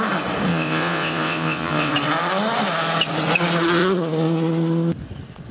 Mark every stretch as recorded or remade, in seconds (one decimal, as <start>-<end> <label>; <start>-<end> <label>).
0.0-0.5 recorded; 0.5-1.9 remade; 1.9-5.5 recorded